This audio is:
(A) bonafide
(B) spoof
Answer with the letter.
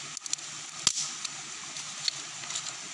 A